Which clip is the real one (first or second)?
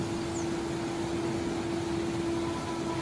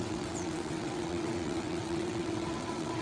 first